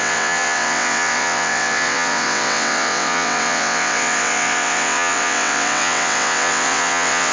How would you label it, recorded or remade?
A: remade